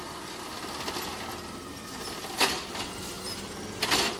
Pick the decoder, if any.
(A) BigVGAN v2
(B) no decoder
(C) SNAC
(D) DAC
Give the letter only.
B